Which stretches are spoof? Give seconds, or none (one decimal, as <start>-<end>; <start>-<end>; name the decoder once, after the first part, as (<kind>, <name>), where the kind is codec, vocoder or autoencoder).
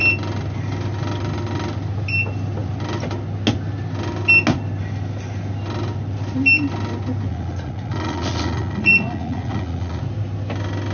7.3-10.0 (vocoder, Vocos)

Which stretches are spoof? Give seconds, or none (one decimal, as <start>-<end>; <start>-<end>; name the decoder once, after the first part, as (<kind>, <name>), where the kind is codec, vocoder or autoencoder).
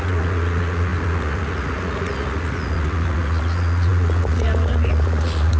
0.0-5.6 (vocoder, Vocos)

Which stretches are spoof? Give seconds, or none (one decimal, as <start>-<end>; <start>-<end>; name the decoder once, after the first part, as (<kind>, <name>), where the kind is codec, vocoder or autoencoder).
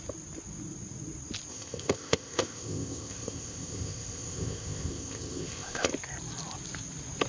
1.5-5.9 (codec, ZipCodec)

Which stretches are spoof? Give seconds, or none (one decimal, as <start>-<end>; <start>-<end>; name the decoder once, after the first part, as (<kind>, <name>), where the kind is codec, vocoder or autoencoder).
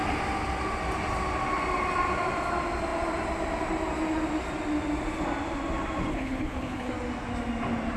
6.1-6.9 (codec, HILCodec)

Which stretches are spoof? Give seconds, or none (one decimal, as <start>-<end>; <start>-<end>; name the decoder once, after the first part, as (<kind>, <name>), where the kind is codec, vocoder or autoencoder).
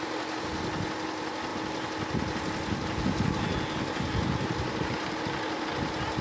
none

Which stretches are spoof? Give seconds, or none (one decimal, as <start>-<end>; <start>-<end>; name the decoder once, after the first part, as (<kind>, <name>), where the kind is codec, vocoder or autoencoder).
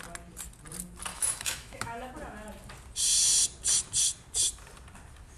1.1-2.1 (autoencoder, DAC-VAE)